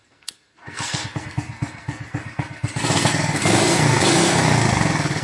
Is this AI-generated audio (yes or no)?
yes